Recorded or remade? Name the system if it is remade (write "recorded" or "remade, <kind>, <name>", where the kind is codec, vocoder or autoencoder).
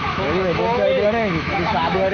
remade, autoencoder, DAC-VAE